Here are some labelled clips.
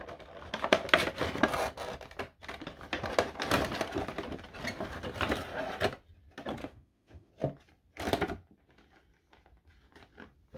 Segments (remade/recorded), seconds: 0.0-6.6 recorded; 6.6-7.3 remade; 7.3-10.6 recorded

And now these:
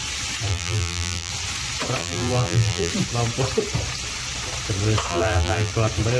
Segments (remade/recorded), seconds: 0.0-0.5 recorded; 0.5-1.3 remade; 1.3-2.0 recorded; 2.0-2.9 remade; 2.9-5.1 recorded; 5.1-5.7 remade; 5.7-6.2 recorded

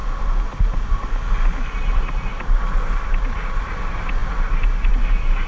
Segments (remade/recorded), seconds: 0.0-5.5 recorded

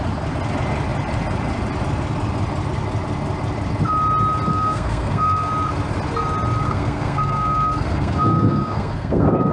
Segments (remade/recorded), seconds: 0.0-4.5 recorded; 4.5-5.5 remade; 5.5-6.6 recorded; 6.6-9.5 remade

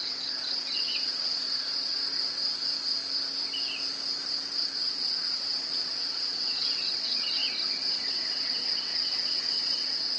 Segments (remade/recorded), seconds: 0.0-2.0 remade; 2.0-4.8 recorded; 4.8-7.4 remade; 7.4-8.1 recorded; 8.1-10.2 remade

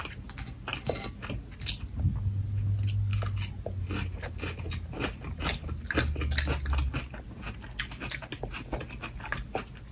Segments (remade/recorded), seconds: 0.0-9.9 recorded

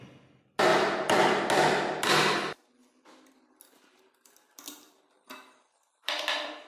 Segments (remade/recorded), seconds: 0.0-6.7 recorded